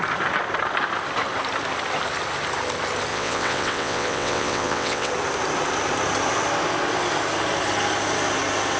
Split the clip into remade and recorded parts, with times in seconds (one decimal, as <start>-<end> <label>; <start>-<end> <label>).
0.0-3.1 recorded; 3.1-5.1 remade; 5.1-8.8 recorded